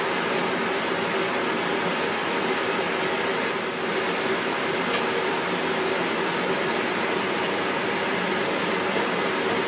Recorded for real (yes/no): yes